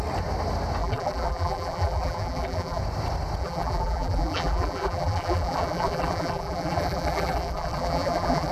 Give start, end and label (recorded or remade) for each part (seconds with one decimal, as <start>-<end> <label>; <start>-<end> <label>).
0.0-0.8 recorded; 0.8-2.8 remade; 2.8-3.4 recorded; 3.4-8.5 remade